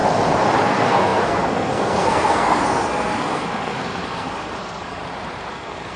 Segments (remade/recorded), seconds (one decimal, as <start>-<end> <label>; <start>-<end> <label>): 0.0-0.6 recorded; 0.6-5.0 remade; 5.0-5.5 recorded; 5.5-6.0 remade